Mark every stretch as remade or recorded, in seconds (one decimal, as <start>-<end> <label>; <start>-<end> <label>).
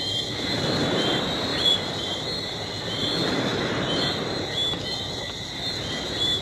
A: 0.0-1.5 recorded; 1.5-2.0 remade; 2.0-6.4 recorded